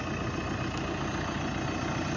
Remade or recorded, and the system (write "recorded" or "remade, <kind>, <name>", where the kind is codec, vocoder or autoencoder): recorded